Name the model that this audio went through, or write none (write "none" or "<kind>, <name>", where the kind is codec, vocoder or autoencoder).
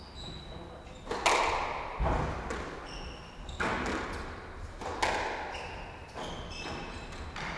none